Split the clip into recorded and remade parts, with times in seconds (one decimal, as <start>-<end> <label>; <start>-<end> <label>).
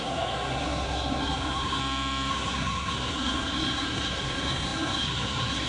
0.0-1.8 remade; 1.8-2.3 recorded; 2.3-5.7 remade